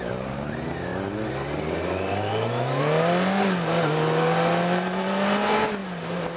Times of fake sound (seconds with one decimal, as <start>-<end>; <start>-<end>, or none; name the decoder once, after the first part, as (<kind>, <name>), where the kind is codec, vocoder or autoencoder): none